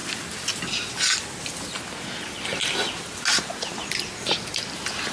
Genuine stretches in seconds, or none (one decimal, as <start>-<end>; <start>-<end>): 0.0-5.1